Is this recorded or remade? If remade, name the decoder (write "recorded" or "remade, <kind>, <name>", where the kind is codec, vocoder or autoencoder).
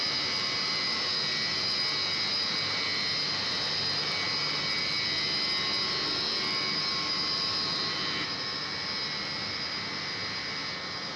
recorded